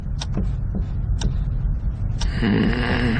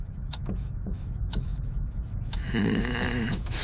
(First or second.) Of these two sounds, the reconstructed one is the second